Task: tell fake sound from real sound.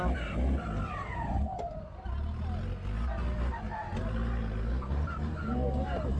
real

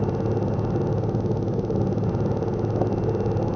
real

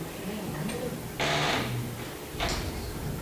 real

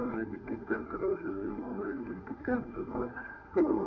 fake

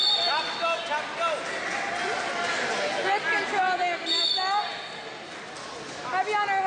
real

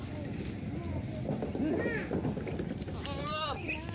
real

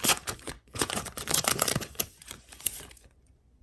fake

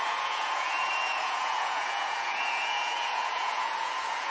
fake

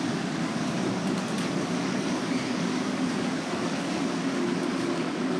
fake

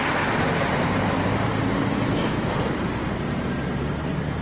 fake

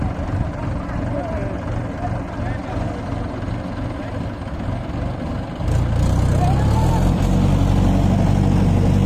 real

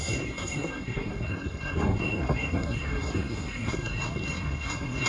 fake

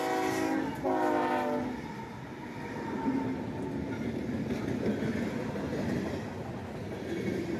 real